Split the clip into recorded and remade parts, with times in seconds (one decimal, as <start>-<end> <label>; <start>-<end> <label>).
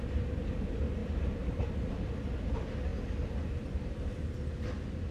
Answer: 0.0-5.1 recorded